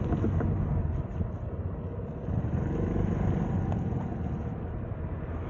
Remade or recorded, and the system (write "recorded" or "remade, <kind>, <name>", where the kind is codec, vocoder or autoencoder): recorded